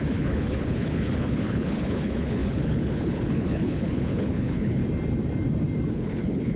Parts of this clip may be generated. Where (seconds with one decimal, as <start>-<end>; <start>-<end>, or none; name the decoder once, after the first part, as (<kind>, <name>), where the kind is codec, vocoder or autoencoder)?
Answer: 0.0-4.8 (codec, HILCodec); 5.9-6.6